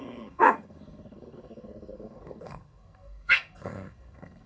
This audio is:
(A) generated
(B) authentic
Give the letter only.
A